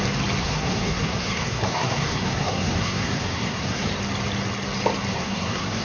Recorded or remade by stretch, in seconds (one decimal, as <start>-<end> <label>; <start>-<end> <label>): 0.0-0.4 recorded; 0.4-3.9 remade; 3.9-5.1 recorded; 5.1-5.8 remade